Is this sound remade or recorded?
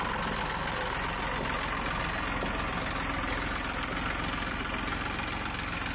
recorded